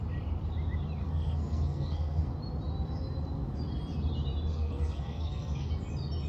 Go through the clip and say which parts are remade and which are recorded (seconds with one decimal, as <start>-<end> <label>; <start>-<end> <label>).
0.0-1.0 recorded; 1.0-2.3 remade; 2.3-4.5 recorded; 4.5-5.7 remade; 5.7-6.3 recorded